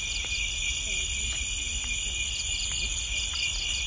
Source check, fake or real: real